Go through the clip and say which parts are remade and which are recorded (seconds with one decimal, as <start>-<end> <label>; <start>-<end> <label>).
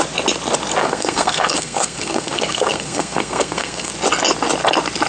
0.0-0.8 recorded; 0.8-3.9 remade; 3.9-5.1 recorded